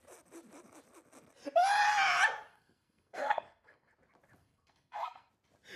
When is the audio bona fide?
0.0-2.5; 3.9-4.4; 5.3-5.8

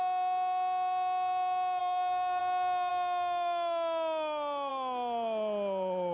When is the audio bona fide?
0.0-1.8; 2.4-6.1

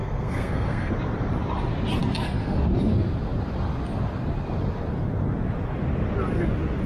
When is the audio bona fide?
0.9-6.9

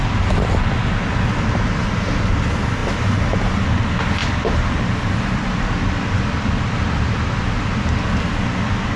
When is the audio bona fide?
0.0-9.0

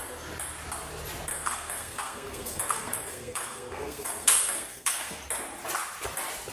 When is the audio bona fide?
0.0-1.3; 5.2-6.5